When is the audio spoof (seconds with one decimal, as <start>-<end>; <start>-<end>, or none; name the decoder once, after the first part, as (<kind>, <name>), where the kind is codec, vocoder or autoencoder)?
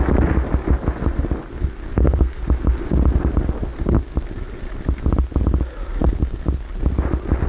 1.9-2.4 (codec, SNAC)